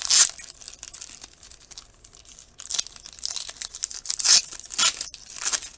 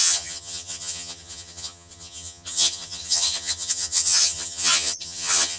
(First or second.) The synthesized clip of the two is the second